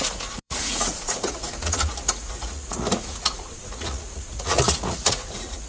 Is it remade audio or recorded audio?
remade